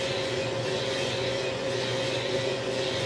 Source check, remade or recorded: remade